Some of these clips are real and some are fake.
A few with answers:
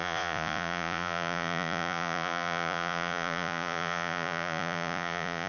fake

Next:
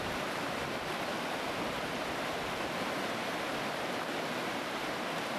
real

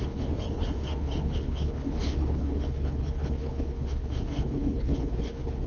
fake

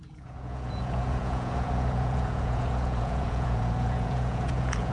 fake